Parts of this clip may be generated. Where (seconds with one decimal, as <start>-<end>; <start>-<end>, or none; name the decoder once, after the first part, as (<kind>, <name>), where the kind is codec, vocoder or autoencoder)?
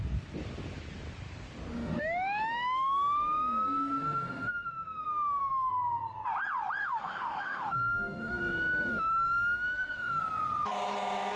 1.7-5.7 (autoencoder, DAC-VAE); 6.8-10.2